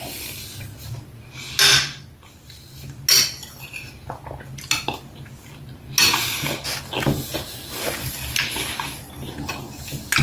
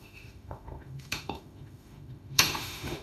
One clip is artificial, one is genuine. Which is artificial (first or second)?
second